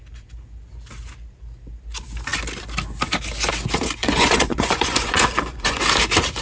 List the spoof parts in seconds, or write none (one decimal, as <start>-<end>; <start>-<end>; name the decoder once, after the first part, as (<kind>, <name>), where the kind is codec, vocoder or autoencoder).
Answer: 4.0-5.8 (vocoder, Vocos)